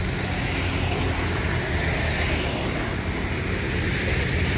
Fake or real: real